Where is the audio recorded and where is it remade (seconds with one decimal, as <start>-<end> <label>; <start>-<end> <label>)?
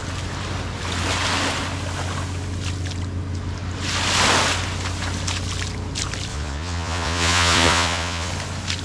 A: 0.0-6.3 recorded; 6.3-8.3 remade; 8.3-8.8 recorded